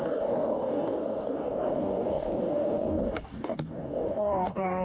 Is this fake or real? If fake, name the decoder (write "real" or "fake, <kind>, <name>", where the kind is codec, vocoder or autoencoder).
fake, codec, DAC